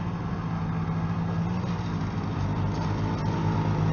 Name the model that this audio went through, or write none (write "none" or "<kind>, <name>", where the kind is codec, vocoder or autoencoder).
none